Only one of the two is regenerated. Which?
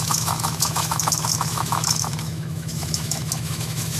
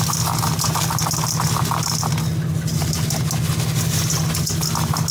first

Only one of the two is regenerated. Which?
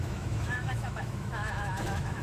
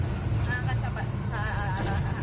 first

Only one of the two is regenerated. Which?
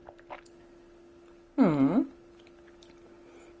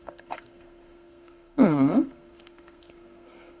second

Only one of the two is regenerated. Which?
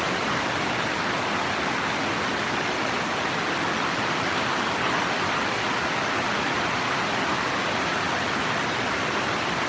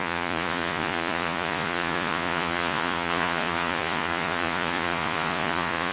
second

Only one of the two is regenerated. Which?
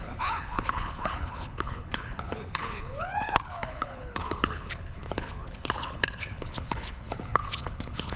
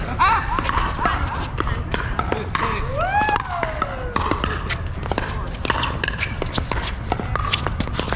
first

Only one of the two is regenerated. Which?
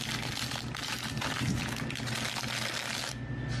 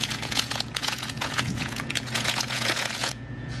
second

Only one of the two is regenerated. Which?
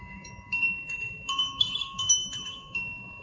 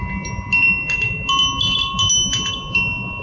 first